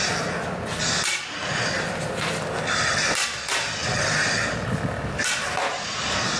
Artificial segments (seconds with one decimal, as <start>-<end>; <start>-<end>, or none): none